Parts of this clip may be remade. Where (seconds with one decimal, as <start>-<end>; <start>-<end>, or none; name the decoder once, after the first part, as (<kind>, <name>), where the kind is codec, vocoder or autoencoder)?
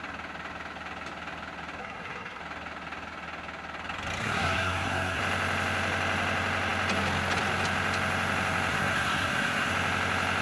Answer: 1.8-2.4 (codec, SNAC); 4.2-5.2; 8.7-9.7